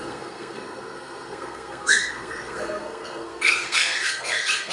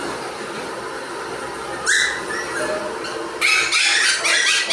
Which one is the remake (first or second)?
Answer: first